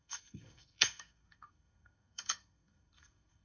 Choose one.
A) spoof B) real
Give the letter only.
A